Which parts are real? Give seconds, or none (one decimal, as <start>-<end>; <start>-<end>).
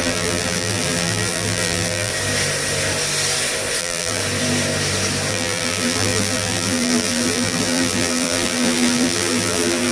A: 2.1-3.8; 4.2-5.3